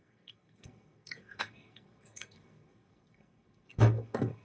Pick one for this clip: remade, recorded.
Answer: remade